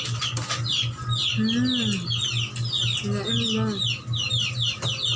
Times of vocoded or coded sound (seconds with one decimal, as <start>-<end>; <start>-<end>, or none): none